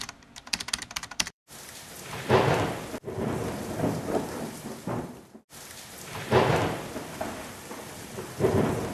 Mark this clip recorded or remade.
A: remade